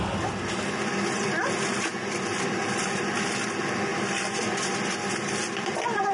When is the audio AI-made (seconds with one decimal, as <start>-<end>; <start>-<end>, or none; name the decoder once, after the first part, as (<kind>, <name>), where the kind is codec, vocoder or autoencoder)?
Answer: 1.9-3.3 (vocoder, BigVGAN v2); 3.9-4.8

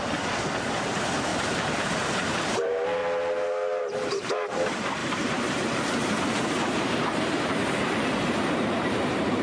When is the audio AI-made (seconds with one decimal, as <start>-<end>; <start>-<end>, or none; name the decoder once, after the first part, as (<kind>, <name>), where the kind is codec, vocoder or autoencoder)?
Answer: 0.0-3.0 (vocoder, BigVGAN v2); 3.8-9.4

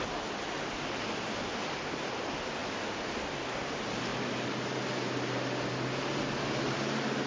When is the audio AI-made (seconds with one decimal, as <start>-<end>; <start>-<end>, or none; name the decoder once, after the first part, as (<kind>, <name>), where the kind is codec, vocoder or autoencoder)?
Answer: none

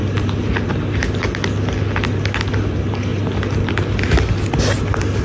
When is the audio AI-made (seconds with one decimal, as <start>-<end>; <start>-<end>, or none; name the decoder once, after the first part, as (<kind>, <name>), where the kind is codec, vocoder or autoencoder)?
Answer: none

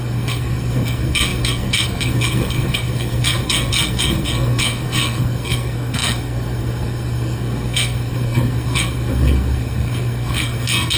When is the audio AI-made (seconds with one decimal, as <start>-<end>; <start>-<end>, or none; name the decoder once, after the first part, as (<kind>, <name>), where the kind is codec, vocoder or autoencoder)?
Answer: 0.0-11.0 (codec, SNAC)

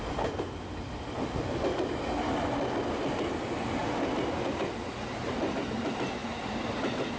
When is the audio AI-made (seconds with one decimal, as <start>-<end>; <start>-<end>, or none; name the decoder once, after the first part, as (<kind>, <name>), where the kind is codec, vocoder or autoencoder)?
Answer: none